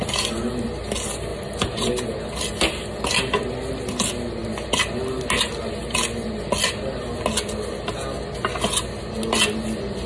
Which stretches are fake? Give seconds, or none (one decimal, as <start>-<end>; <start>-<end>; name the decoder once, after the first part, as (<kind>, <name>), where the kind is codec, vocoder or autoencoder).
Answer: 1.3-1.9 (vocoder, BigVGAN v2)

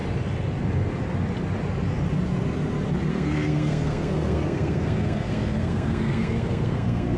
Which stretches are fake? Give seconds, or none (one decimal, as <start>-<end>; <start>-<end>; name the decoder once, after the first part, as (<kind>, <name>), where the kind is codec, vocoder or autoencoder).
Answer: 3.1-7.2 (codec, SNAC)

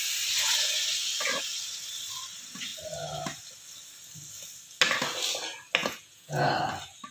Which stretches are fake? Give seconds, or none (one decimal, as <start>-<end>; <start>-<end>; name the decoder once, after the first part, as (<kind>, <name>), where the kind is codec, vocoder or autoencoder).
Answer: 5.8-6.5 (vocoder, Vocos)

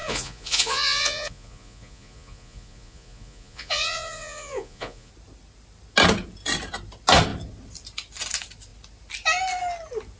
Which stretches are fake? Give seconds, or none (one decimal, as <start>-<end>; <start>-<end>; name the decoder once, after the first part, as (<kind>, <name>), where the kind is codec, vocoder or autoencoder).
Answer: 0.0-5.1 (vocoder, Vocos)

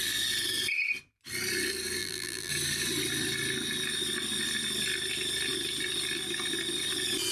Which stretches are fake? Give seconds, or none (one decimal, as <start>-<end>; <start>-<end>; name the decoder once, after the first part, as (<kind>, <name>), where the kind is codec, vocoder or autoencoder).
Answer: 2.0-2.5 (vocoder, BigVGAN v2)